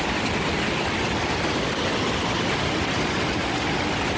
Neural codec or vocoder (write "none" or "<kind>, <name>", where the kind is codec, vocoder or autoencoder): none